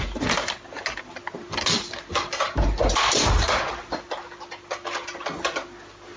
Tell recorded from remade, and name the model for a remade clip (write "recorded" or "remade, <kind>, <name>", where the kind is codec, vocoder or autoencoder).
recorded